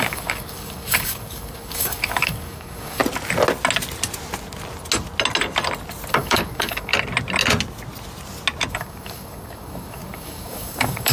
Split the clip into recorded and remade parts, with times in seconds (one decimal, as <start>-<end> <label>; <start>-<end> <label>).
0.0-3.0 remade; 3.0-6.1 recorded; 6.1-6.9 remade; 6.9-8.7 recorded; 8.7-11.1 remade